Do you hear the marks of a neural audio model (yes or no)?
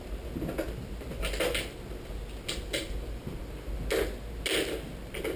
no